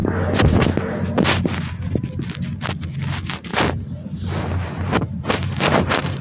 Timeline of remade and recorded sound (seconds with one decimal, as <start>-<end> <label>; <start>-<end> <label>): 0.0-3.5 recorded; 3.5-6.2 remade